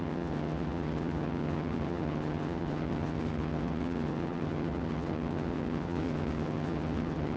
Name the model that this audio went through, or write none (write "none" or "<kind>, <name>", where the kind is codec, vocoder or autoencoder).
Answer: vocoder, HiFi-GAN